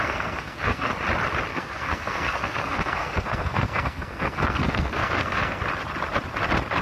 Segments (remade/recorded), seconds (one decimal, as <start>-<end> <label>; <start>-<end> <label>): 0.0-0.9 remade; 0.9-1.5 recorded; 1.5-5.6 remade; 5.6-6.8 recorded